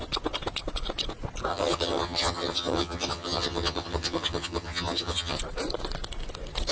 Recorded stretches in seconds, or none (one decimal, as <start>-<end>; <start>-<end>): 0.0-1.5; 5.4-6.7